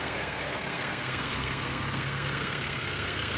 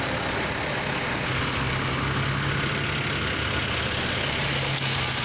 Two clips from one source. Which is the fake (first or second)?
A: first